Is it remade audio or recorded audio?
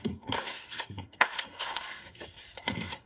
remade